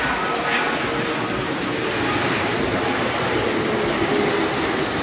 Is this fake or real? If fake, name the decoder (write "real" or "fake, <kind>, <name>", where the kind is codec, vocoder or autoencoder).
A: real